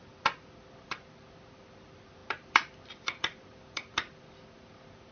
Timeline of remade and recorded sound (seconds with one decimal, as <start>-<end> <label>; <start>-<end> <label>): 0.0-2.2 recorded; 2.2-3.4 remade; 3.4-5.1 recorded